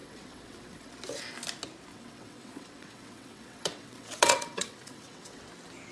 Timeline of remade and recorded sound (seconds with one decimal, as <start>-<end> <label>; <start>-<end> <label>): 0.0-0.9 remade; 0.9-1.9 recorded; 1.9-5.4 remade; 5.4-5.9 recorded